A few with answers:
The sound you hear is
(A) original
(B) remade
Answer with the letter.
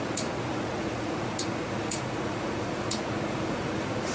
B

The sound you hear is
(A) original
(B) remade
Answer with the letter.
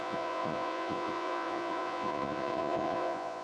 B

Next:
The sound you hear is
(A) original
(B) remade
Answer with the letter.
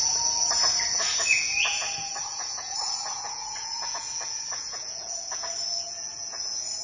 B